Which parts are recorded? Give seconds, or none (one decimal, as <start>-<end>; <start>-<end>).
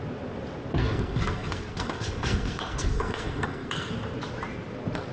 0.0-0.8; 3.9-5.1